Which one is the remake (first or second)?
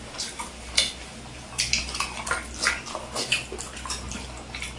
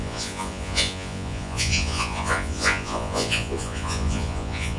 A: second